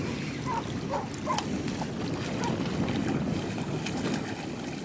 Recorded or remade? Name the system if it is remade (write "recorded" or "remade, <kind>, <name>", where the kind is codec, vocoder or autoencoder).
recorded